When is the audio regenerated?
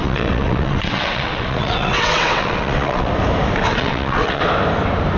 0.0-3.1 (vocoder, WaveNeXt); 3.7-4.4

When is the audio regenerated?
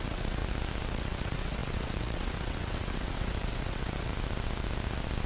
0.0-0.4 (vocoder, WaveNeXt); 0.9-4.1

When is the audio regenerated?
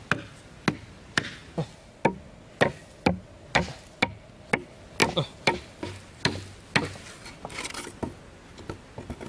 none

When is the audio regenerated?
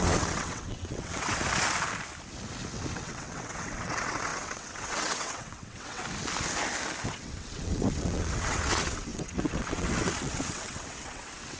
0.0-1.4 (vocoder, WaveNeXt); 2.9-6.0; 7.1-11.6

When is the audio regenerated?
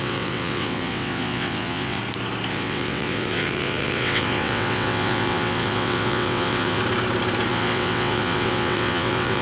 0.0-2.0 (vocoder, WaveNeXt); 2.5-6.8; 7.5-9.4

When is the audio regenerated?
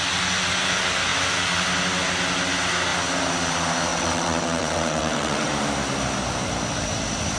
3.9-5.5 (vocoder, WaveNeXt)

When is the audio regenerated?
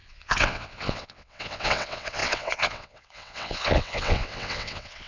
0.0-5.1 (vocoder, WaveNeXt)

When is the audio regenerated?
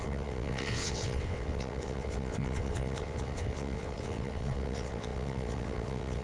0.0-6.2 (vocoder, WaveNeXt)